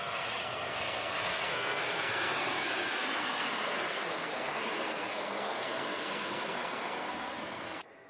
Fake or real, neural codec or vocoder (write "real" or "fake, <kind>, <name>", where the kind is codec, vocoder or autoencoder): fake, codec, SNAC